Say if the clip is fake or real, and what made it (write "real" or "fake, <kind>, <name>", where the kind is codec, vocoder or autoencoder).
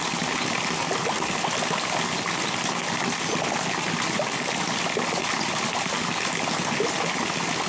real